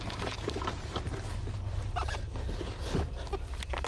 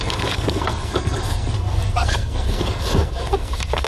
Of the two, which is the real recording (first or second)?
first